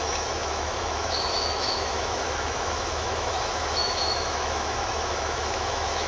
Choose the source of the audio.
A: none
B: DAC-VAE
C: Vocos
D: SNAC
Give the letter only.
B